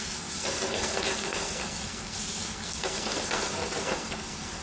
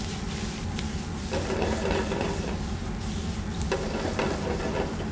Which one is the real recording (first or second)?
second